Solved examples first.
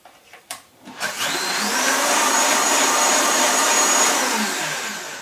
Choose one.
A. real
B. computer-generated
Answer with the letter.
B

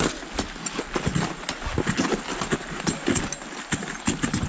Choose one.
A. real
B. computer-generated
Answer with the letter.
A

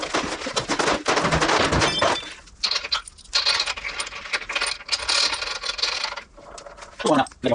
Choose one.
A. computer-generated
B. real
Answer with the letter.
B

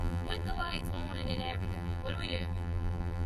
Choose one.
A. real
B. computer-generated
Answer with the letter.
B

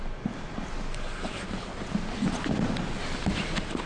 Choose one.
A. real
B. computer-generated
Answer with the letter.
A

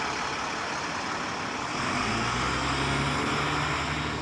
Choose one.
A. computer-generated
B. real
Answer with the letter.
B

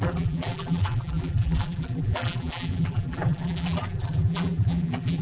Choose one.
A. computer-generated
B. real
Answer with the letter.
A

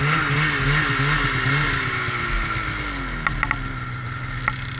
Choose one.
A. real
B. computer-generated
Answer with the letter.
A